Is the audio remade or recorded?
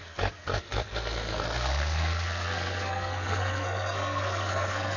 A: remade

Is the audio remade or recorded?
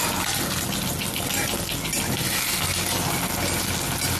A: recorded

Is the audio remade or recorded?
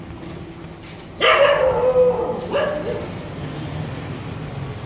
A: recorded